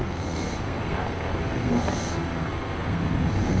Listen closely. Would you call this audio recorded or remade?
remade